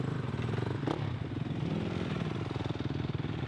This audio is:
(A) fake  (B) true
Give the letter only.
B